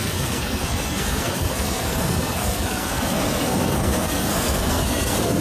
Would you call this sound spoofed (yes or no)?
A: yes